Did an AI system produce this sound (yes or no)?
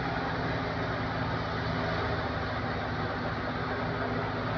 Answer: no